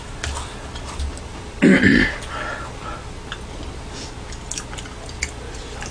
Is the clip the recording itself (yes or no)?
yes